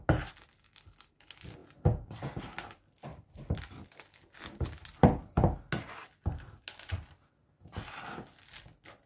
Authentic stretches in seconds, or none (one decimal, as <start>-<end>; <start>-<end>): 0.0-9.1